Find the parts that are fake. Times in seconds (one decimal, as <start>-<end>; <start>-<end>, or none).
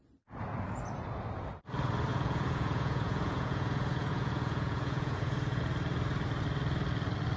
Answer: 2.1-5.6